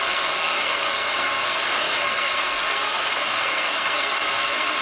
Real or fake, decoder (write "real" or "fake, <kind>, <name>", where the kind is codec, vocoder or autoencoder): fake, codec, SNAC